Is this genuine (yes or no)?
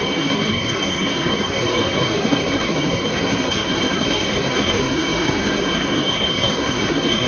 no